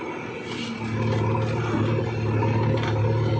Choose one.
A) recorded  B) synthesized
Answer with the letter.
A